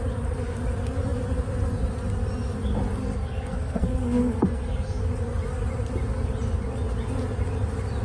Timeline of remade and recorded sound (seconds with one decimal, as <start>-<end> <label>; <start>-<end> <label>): 0.0-3.0 recorded; 3.0-5.0 remade; 5.0-8.0 recorded